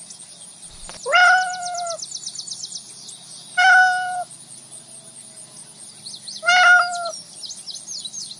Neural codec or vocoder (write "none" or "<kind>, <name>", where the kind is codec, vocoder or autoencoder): none